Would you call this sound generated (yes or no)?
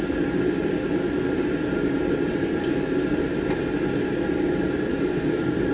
no